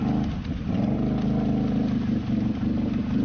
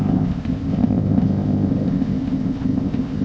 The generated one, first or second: second